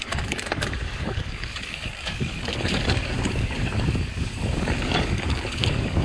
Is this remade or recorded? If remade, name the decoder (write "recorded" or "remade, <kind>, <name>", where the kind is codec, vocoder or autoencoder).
remade, codec, DAC